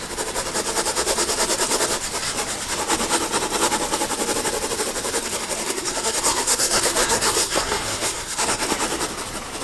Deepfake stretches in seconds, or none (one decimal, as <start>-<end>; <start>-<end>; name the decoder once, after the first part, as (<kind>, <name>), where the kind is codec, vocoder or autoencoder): 5.2-8.7 (codec, SNAC)